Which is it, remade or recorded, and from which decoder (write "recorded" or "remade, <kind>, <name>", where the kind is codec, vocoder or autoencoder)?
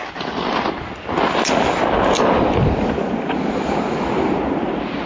recorded